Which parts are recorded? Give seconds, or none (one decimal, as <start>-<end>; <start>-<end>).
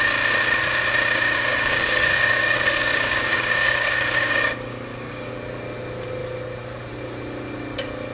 0.0-1.5; 5.3-8.1